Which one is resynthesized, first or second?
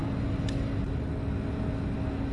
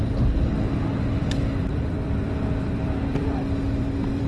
second